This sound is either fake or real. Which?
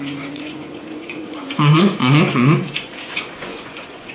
fake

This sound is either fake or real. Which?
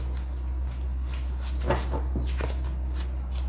real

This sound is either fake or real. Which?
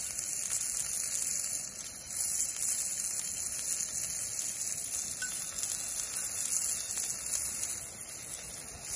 real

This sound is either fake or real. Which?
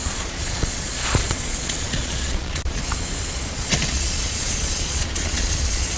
fake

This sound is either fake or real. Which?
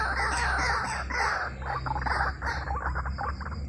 real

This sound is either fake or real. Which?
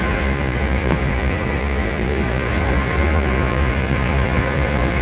fake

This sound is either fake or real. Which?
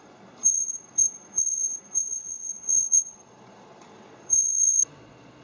fake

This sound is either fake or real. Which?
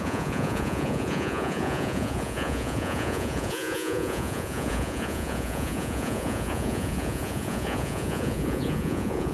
fake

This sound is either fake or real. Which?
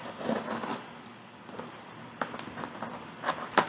real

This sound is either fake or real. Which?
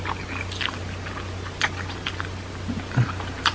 real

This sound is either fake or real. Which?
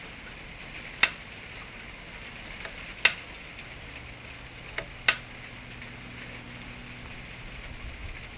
real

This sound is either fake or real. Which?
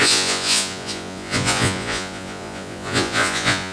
fake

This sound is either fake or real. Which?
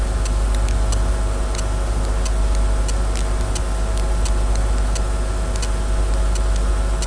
real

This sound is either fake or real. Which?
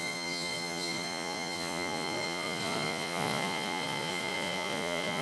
fake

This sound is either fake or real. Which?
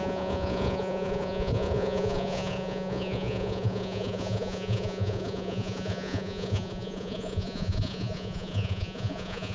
fake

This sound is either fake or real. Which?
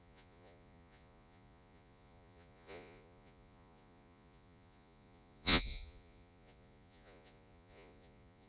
fake